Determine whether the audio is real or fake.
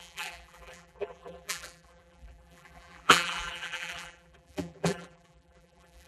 fake